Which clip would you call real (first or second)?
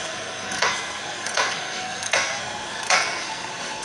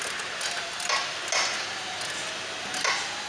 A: second